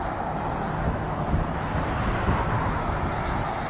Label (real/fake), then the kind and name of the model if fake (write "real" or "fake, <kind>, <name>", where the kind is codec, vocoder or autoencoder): real